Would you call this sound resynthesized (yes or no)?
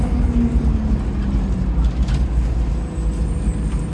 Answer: no